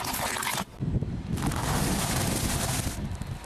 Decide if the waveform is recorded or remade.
recorded